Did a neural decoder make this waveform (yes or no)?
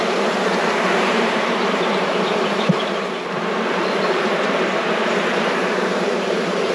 yes